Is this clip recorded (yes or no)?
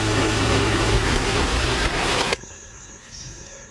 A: no